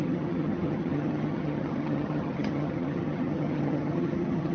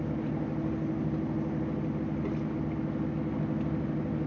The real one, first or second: second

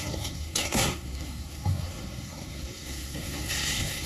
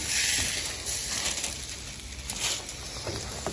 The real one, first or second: second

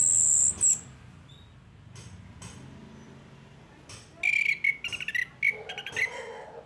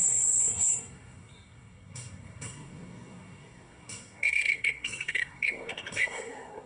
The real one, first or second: first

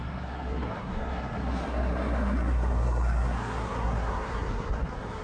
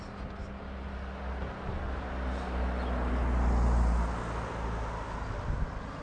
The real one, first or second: second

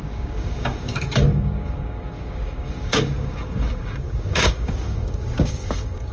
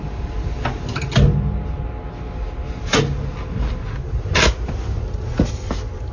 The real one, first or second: second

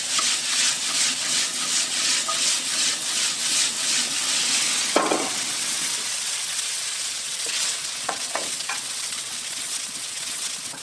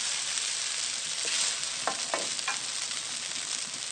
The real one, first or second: second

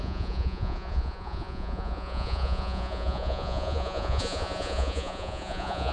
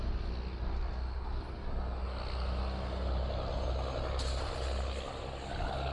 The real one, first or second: second